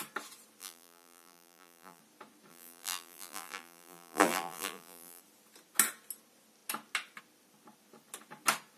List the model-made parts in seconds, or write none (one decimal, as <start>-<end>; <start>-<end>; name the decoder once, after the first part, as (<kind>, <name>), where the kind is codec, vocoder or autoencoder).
0.6-2.0 (vocoder, BigVGAN v2); 2.5-5.2